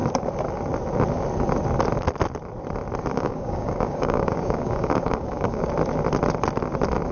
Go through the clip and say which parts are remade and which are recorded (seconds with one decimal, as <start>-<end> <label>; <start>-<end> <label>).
0.0-3.1 recorded; 3.1-5.7 remade; 5.7-7.1 recorded